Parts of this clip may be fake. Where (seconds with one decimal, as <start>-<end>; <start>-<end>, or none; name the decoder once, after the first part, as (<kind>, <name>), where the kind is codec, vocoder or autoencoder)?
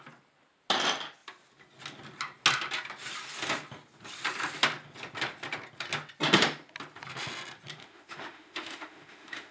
7.8-9.5 (autoencoder, DAC-VAE)